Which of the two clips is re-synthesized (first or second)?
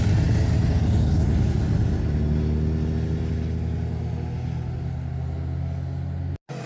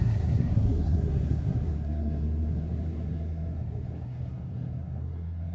second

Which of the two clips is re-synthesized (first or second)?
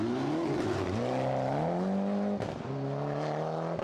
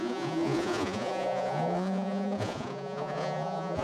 second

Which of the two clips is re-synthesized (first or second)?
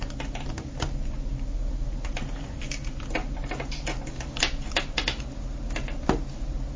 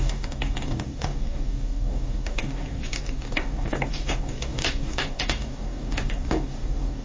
second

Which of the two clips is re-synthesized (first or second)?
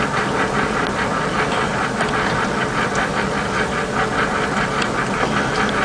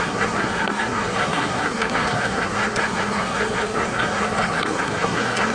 second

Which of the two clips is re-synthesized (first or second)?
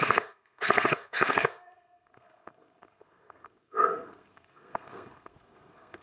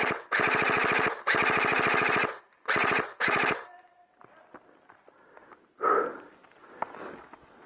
first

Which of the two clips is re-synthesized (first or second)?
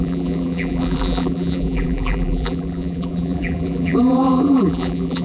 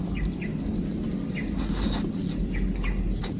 first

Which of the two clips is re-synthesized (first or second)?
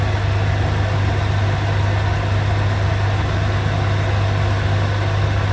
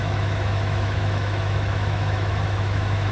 second